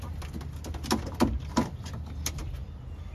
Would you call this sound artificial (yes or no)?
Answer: no